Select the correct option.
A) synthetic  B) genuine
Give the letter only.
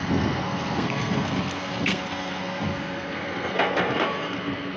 A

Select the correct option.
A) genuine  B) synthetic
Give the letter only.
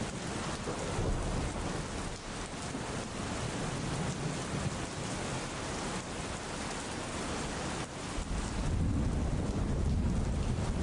A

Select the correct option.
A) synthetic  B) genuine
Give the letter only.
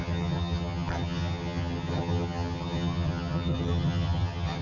A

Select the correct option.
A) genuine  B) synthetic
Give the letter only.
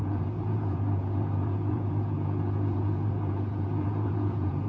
B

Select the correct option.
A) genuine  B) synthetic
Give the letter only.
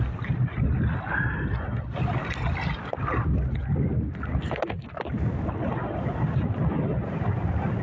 A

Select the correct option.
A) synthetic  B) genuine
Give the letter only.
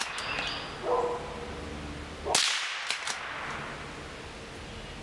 B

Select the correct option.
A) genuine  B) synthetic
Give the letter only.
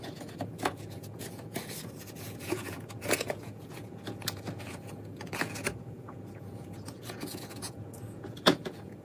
B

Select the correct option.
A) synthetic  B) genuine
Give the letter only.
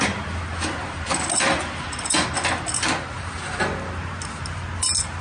B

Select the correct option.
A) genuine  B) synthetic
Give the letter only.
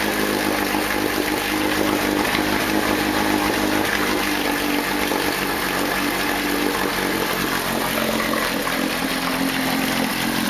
A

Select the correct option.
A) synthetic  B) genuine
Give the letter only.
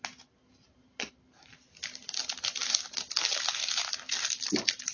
B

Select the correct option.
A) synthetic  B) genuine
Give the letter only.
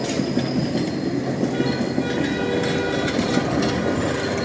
B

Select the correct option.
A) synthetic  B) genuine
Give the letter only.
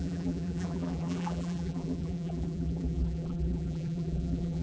A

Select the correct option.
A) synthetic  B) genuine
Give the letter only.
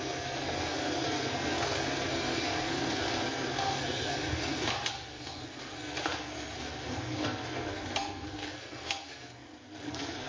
A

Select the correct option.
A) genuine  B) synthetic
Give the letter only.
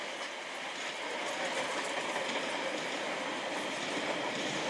A